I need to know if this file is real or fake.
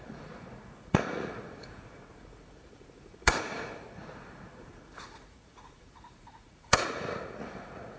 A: fake